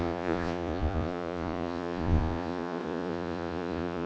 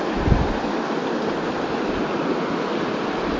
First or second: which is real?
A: second